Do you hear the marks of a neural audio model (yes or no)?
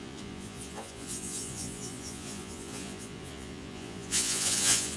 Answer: yes